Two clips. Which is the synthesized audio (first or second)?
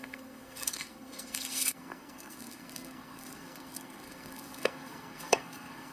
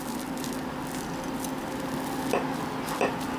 first